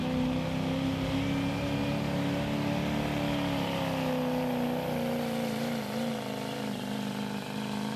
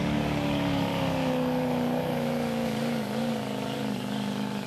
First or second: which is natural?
first